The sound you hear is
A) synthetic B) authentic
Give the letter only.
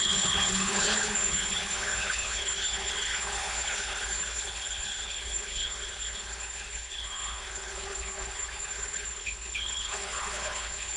A